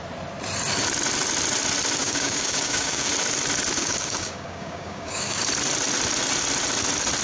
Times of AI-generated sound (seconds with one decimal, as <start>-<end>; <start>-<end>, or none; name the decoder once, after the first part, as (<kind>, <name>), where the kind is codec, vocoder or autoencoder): 2.0-3.1 (codec, DAC); 3.8-5.4